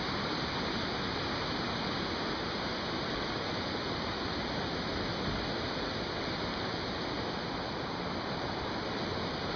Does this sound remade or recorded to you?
recorded